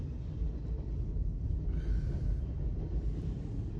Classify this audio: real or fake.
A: real